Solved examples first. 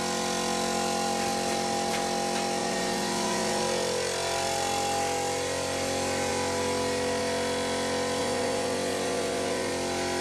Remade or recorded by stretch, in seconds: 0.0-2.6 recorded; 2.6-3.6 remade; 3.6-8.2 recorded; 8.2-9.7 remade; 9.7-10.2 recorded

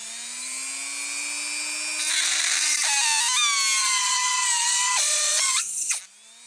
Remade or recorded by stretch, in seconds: 0.0-3.8 recorded; 3.8-6.0 remade; 6.0-6.5 recorded

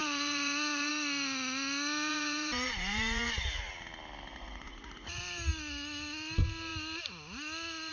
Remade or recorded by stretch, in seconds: 0.0-0.9 remade; 0.9-2.1 recorded; 2.1-3.7 remade; 3.7-4.3 recorded; 4.3-5.2 remade; 5.2-7.9 recorded